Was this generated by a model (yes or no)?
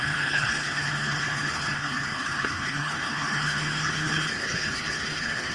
yes